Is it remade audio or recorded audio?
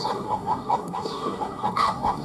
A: remade